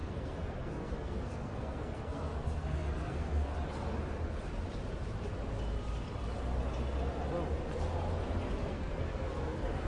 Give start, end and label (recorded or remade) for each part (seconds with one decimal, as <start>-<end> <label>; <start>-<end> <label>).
0.0-3.5 remade; 3.5-8.6 recorded; 8.6-9.9 remade